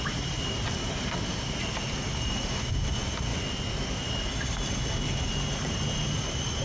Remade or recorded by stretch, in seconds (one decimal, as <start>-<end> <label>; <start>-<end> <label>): 0.0-0.8 recorded; 0.8-1.4 remade; 1.4-6.6 recorded